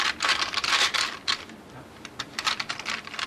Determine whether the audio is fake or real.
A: real